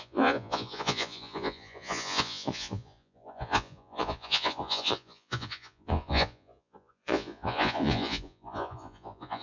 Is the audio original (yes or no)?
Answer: no